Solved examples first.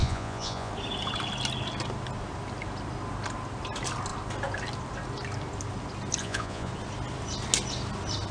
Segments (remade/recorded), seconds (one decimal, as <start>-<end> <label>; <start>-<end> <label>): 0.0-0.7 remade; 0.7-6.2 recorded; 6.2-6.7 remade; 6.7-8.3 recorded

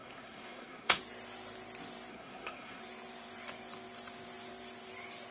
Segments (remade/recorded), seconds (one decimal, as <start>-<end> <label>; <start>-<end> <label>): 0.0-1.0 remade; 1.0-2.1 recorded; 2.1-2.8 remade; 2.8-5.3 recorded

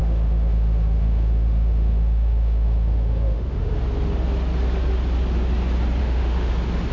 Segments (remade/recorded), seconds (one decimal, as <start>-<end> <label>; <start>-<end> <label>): 0.0-3.7 remade; 3.7-6.0 recorded; 6.0-6.5 remade; 6.5-6.9 recorded

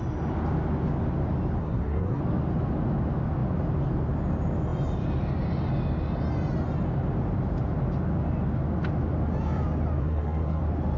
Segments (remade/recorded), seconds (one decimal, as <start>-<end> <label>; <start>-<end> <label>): 0.0-1.6 recorded; 1.6-2.2 remade; 2.2-10.0 recorded; 10.0-10.6 remade; 10.6-11.0 recorded

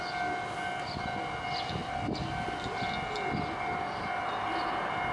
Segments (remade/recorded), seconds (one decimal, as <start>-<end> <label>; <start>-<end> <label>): 0.0-5.1 recorded

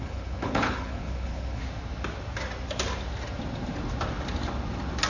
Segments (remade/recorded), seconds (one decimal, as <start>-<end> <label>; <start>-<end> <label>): 0.0-1.6 remade; 1.6-5.1 recorded

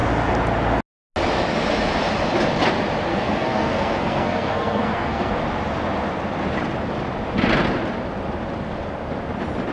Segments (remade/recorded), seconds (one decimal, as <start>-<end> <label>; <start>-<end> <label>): 0.0-3.1 recorded; 3.1-5.3 remade; 5.3-9.7 recorded